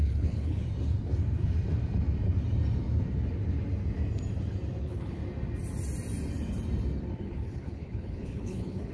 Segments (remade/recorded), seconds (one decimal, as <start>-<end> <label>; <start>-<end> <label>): 0.0-0.6 remade; 0.6-4.8 recorded; 4.8-5.2 remade; 5.2-7.2 recorded; 7.2-8.9 remade